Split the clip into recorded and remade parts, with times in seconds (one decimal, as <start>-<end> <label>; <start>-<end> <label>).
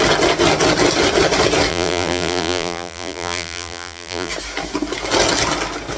0.0-1.7 recorded; 1.7-4.3 remade; 4.3-6.0 recorded